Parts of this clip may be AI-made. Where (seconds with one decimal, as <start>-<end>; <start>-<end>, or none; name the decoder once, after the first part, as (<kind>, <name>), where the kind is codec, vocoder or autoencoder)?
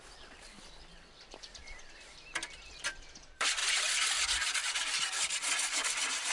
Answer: 0.0-3.6 (vocoder, BigVGAN v2); 4.6-6.3